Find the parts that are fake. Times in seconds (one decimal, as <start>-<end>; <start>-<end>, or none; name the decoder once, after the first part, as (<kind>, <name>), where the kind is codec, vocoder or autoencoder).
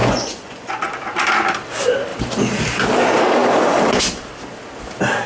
0.0-0.9 (vocoder, Vocos)